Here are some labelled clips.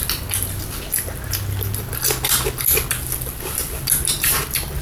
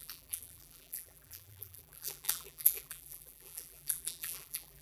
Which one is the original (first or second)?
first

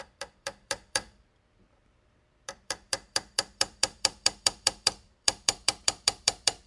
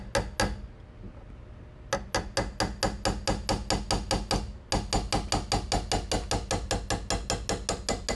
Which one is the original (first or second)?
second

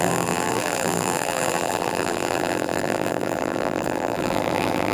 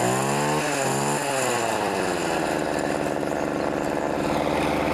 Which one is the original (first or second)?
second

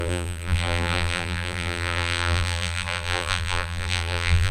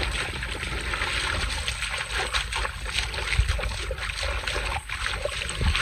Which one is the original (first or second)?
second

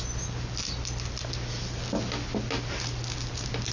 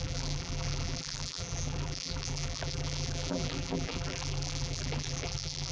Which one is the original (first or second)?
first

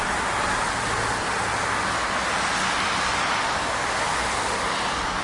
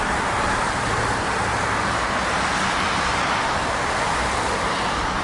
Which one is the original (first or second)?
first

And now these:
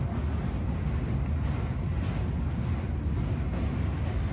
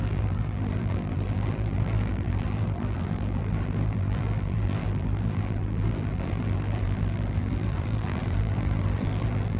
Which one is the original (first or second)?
first